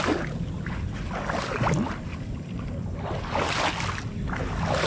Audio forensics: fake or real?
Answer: real